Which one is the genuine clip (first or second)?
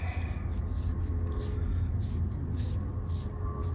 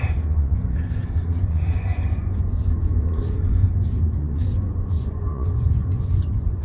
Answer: first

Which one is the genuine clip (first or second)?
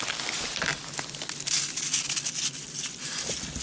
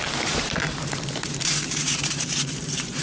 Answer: first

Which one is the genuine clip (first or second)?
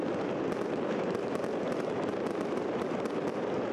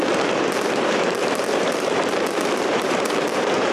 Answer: first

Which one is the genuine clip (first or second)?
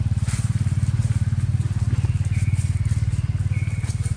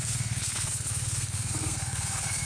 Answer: first